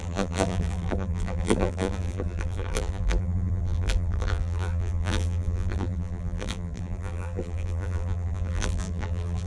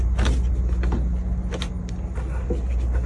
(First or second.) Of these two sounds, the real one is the second